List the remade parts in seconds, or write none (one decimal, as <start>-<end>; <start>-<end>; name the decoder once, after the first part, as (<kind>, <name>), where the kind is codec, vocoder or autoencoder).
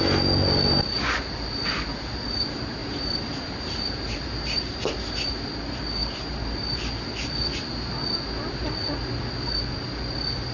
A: 2.8-4.7 (vocoder, BigVGAN v2)